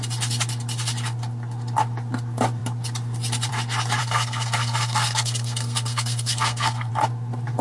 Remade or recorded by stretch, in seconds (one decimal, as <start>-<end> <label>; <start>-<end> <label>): 0.0-4.0 recorded; 4.0-6.9 remade; 6.9-7.6 recorded